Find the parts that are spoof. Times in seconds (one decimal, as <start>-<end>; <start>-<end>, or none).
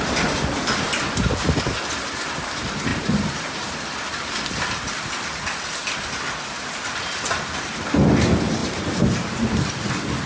2.9-3.8; 8.6-9.9